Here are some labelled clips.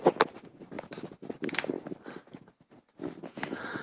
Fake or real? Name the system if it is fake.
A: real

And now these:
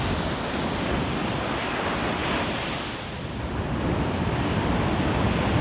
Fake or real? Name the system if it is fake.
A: real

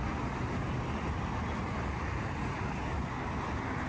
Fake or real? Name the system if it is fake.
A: real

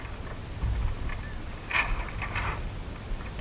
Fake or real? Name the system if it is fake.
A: real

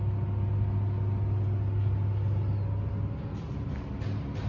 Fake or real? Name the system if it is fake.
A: real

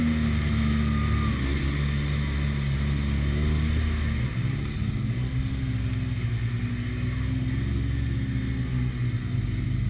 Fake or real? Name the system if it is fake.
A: real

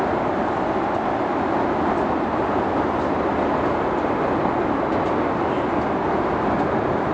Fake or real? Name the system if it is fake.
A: real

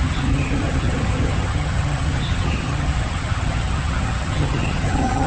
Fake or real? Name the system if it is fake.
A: fake, vocoder, HiFi-GAN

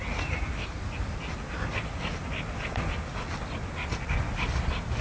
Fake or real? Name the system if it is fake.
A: real